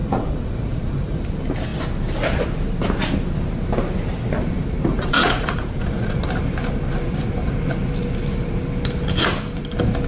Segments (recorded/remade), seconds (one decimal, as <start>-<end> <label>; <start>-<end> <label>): 0.0-1.2 remade; 1.2-4.9 recorded; 4.9-6.2 remade; 6.2-10.1 recorded